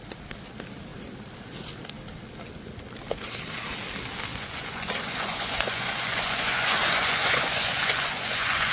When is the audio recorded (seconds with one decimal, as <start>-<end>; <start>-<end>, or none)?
0.0-4.3